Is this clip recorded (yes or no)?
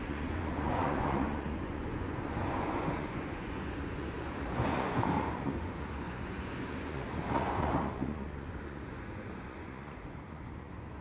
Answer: no